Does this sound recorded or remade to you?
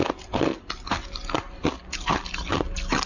recorded